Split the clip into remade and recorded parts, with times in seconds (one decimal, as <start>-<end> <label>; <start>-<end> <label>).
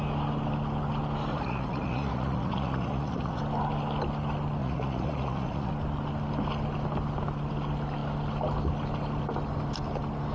0.0-1.3 recorded; 1.3-3.4 remade; 3.4-4.6 recorded; 4.6-5.7 remade; 5.7-10.3 recorded